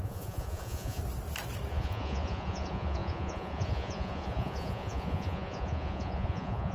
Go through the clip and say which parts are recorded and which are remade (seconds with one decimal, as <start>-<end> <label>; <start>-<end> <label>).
0.0-1.0 remade; 1.0-1.7 recorded; 1.7-6.7 remade